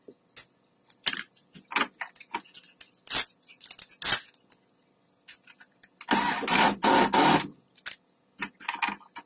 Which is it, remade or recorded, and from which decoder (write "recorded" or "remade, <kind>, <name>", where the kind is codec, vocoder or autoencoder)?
recorded